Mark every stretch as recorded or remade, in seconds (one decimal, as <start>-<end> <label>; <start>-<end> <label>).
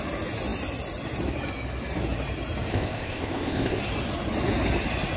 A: 0.0-2.7 recorded; 2.7-3.8 remade; 3.8-5.2 recorded